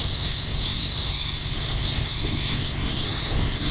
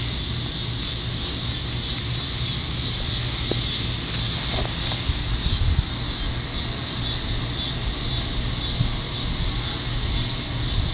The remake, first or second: first